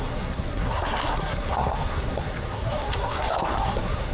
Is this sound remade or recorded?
remade